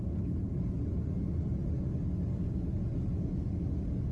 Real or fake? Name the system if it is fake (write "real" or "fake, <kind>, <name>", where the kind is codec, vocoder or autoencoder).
real